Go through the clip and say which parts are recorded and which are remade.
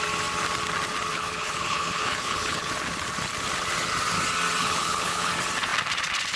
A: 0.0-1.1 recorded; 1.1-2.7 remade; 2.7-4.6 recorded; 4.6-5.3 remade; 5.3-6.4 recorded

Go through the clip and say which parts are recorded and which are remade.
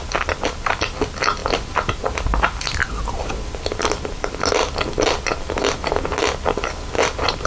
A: 0.0-7.5 recorded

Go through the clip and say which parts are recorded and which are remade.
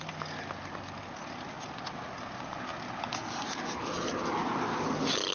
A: 0.0-5.3 recorded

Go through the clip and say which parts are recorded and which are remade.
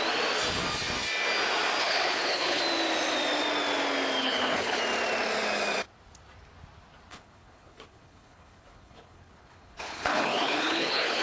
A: 0.0-1.8 recorded; 1.8-2.6 remade; 2.6-4.2 recorded; 4.2-4.8 remade; 4.8-7.1 recorded; 7.1-11.2 remade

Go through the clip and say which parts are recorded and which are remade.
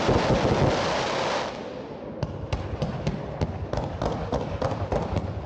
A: 0.0-5.5 recorded